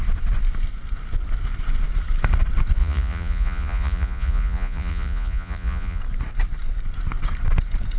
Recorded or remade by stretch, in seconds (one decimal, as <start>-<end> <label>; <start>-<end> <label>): 0.0-2.8 recorded; 2.8-6.0 remade; 6.0-8.0 recorded